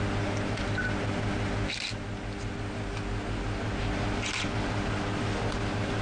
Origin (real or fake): real